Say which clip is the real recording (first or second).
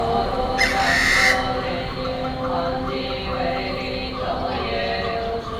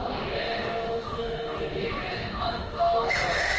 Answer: first